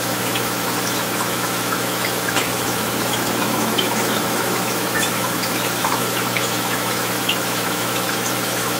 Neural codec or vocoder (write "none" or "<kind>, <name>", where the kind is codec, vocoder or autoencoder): autoencoder, DAC-VAE